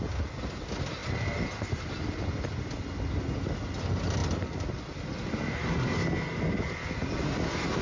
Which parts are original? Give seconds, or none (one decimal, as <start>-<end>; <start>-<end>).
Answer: 0.0-7.8